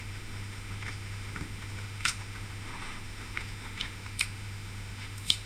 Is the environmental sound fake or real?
fake